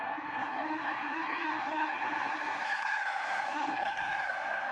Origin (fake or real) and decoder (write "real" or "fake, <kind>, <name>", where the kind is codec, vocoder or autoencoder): fake, codec, SNAC